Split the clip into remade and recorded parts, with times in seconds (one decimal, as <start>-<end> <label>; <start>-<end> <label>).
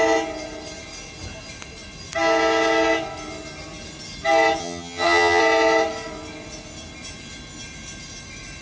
0.0-4.6 recorded; 4.6-5.4 remade; 5.4-8.6 recorded